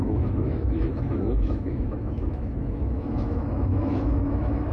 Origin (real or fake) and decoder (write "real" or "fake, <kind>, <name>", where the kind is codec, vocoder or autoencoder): fake, autoencoder, DAC-VAE